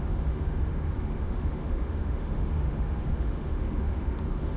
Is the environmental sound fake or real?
fake